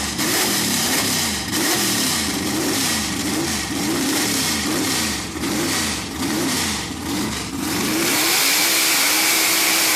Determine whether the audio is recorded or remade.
remade